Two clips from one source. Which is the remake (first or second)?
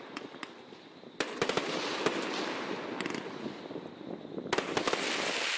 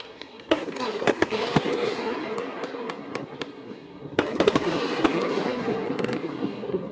second